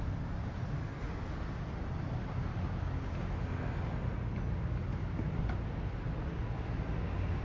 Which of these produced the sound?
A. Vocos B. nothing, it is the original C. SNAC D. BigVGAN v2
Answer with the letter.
B